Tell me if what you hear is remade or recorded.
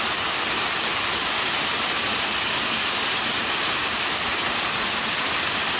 recorded